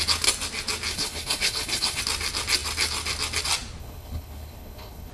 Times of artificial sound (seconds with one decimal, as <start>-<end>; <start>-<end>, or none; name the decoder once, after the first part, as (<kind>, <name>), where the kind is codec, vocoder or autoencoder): 0.9-2.0 (codec, HILCodec); 3.8-5.1